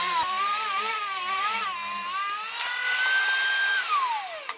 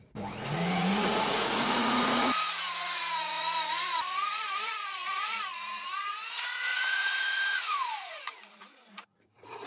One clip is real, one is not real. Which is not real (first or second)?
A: second